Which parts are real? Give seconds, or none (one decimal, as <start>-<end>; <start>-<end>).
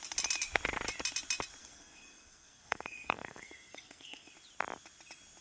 0.0-1.6; 4.3-5.4